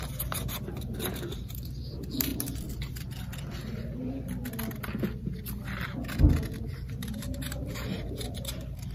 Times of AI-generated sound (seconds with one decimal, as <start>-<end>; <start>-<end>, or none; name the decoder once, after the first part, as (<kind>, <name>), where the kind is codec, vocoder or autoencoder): 0.0-2.3 (vocoder, BigVGAN v2); 6.6-8.9